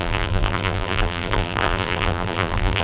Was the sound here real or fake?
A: fake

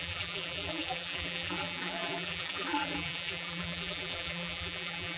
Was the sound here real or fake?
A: fake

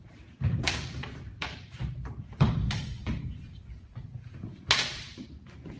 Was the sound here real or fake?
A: fake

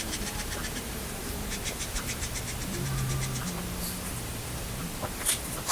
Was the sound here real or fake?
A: fake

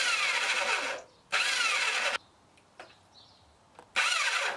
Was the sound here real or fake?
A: real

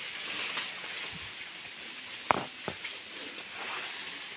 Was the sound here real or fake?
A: real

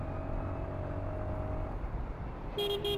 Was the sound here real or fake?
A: real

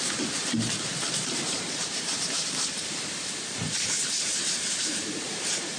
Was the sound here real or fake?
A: fake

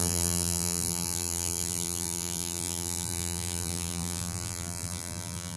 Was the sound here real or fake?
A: fake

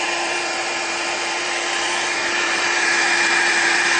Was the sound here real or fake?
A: fake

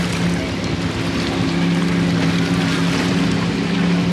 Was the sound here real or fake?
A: real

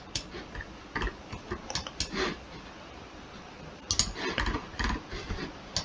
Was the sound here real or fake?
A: real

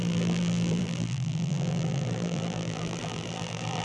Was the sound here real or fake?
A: fake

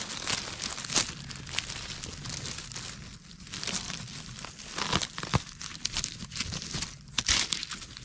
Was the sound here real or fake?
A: real